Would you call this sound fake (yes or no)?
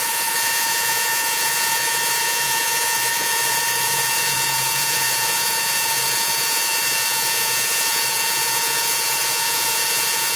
yes